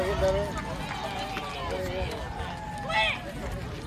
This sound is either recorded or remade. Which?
recorded